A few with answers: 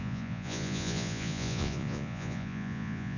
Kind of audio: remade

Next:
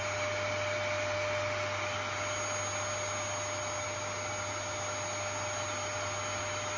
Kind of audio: recorded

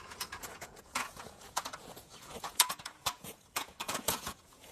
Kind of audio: remade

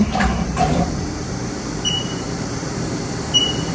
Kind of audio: remade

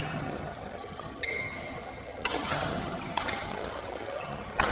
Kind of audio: remade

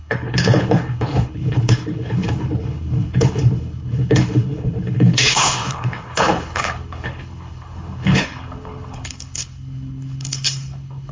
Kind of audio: remade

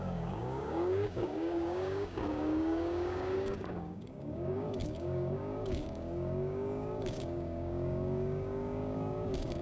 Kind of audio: remade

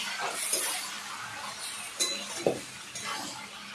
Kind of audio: recorded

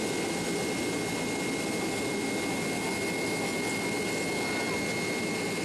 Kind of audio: recorded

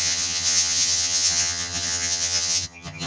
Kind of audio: remade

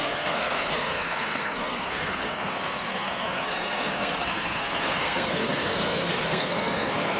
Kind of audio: remade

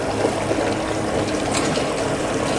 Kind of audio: recorded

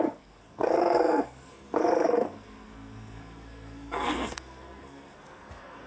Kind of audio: remade